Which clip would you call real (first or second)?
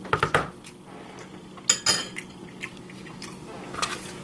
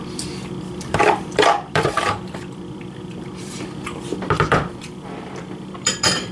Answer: first